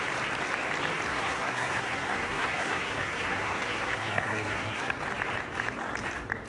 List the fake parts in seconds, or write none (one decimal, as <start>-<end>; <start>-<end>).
1.1-5.0